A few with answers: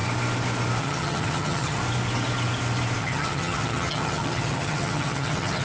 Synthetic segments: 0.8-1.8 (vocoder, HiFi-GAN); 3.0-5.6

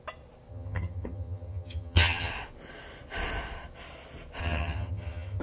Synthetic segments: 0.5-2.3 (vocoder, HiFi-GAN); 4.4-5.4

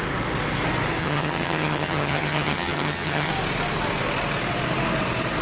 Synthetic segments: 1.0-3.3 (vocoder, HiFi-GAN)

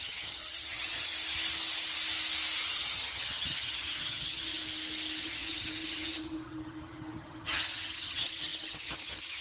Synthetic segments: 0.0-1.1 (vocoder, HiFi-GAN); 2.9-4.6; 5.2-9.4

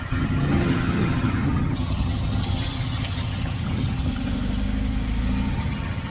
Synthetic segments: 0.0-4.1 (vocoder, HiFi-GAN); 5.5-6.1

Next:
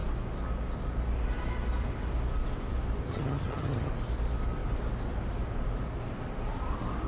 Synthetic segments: 3.1-3.9 (vocoder, HiFi-GAN)